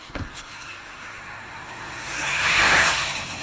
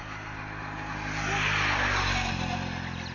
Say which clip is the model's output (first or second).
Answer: first